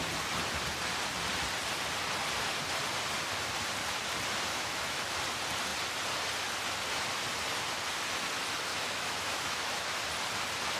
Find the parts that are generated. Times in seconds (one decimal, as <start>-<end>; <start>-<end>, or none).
4.5-5.2; 8.7-10.0